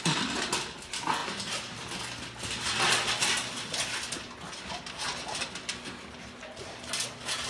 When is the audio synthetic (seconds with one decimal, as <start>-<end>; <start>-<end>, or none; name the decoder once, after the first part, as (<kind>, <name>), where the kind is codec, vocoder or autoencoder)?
none